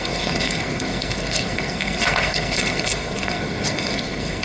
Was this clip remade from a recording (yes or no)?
yes